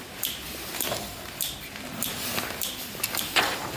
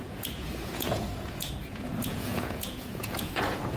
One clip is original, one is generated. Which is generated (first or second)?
second